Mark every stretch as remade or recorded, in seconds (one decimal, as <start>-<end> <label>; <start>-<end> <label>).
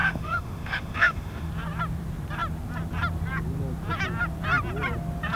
0.0-1.5 remade; 1.5-5.4 recorded